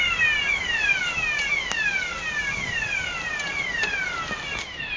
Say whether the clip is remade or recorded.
recorded